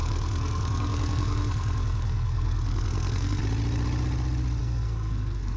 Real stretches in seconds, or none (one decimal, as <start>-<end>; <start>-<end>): 3.4-4.6